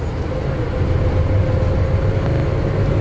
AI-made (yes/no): no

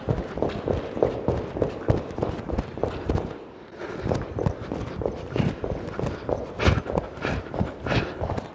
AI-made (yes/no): no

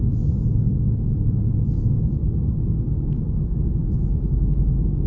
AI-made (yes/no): no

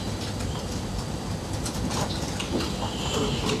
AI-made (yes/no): no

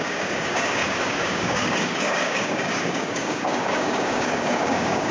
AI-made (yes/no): yes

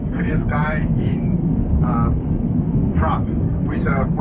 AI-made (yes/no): yes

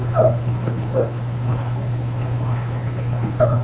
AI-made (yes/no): yes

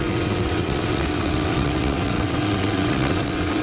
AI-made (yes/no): yes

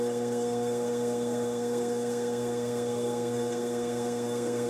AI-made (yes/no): yes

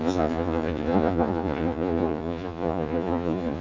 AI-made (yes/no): yes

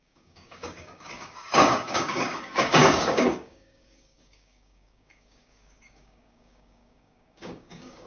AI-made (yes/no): yes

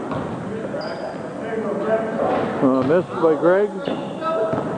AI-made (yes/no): no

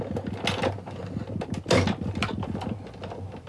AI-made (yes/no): no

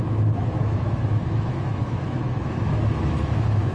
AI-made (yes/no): yes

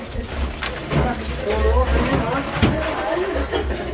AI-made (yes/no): no